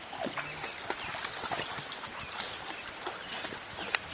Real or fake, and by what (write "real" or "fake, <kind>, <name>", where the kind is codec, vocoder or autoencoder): real